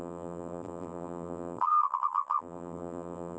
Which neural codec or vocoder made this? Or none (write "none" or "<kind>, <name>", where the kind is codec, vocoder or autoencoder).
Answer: vocoder, BigVGAN v2